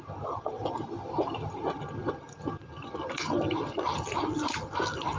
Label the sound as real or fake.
real